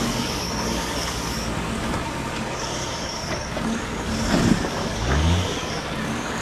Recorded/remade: remade